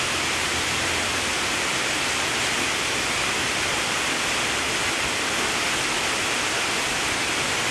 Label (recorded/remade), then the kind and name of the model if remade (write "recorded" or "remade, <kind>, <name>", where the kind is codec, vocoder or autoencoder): remade, vocoder, BigVGAN v2